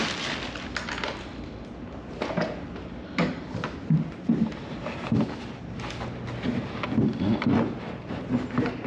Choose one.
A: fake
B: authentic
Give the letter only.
B